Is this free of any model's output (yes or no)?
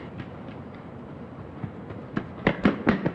yes